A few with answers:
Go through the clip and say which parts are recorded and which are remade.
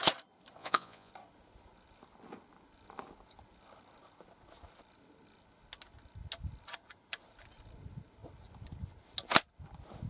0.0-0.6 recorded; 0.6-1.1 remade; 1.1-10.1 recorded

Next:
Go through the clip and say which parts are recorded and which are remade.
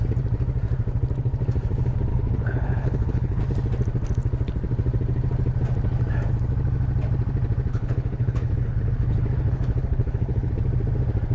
0.0-2.1 recorded; 2.1-3.4 remade; 3.4-7.7 recorded; 7.7-10.5 remade; 10.5-11.3 recorded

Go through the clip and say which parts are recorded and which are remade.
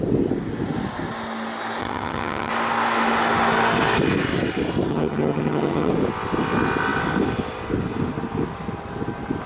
0.0-1.8 recorded; 1.8-2.5 remade; 2.5-4.9 recorded; 4.9-5.9 remade; 5.9-9.5 recorded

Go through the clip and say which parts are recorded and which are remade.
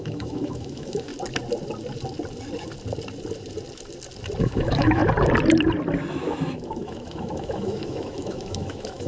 0.0-1.1 remade; 1.1-4.4 recorded; 4.4-5.0 remade; 5.0-6.1 recorded; 6.1-9.1 remade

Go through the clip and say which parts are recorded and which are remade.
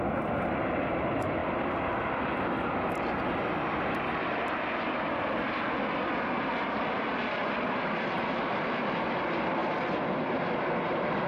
0.0-1.4 recorded; 1.4-5.8 remade; 5.8-7.4 recorded; 7.4-7.9 remade; 7.9-11.3 recorded